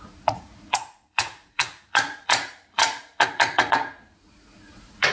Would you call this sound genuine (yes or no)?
no